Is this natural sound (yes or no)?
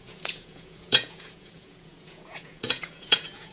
no